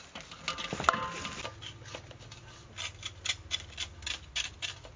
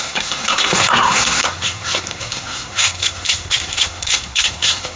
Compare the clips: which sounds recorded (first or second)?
first